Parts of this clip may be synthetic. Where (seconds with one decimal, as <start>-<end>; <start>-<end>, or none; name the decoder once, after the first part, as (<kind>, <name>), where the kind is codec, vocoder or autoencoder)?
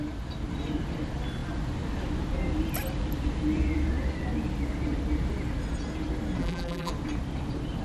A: 6.4-6.9 (vocoder, BigVGAN v2)